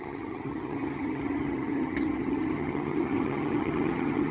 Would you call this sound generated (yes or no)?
yes